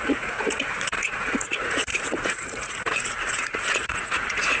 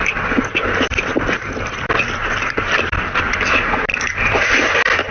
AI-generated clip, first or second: first